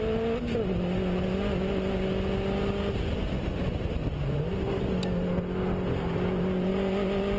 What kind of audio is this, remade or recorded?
recorded